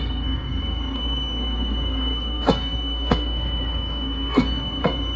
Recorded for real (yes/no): no